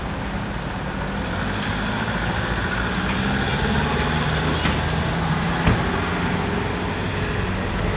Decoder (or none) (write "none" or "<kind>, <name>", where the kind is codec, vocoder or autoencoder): none